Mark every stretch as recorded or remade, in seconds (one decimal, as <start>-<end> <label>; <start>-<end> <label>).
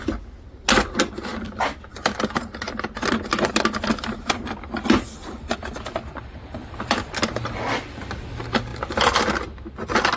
0.0-10.2 recorded